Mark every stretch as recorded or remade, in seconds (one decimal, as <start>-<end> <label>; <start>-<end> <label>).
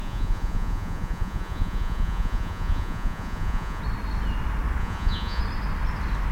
0.0-3.8 remade; 3.8-4.8 recorded; 4.8-5.4 remade; 5.4-6.3 recorded